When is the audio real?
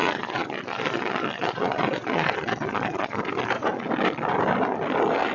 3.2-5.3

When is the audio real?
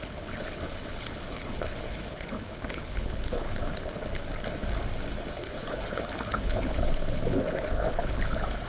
4.1-5.3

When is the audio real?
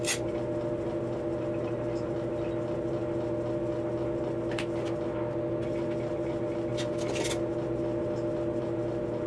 0.0-9.3